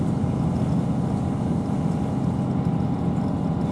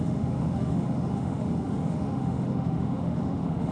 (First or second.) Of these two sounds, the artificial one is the second